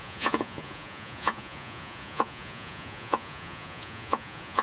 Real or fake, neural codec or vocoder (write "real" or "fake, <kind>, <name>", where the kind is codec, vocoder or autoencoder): fake, vocoder, Vocos